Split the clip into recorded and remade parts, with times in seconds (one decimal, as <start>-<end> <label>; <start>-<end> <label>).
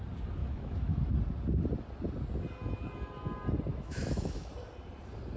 0.0-0.4 recorded; 0.4-1.1 remade; 1.1-3.7 recorded; 3.7-4.5 remade; 4.5-5.4 recorded